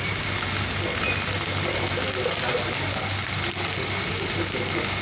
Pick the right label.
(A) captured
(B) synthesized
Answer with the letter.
A